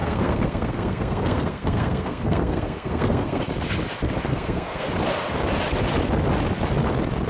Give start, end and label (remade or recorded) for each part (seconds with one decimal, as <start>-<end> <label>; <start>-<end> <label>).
0.0-3.4 remade; 3.4-4.3 recorded; 4.3-4.9 remade; 4.9-7.3 recorded